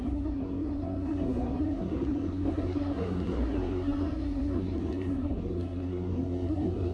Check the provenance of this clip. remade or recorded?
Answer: remade